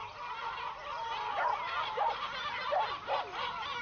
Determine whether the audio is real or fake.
real